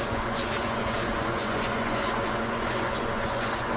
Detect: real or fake fake